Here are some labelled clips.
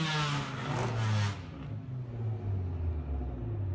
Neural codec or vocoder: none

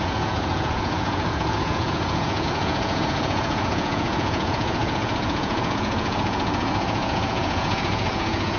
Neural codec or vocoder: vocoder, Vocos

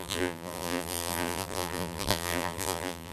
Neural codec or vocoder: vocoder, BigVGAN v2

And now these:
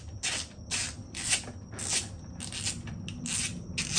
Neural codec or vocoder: none